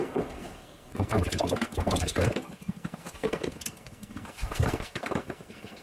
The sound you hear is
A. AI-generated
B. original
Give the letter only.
A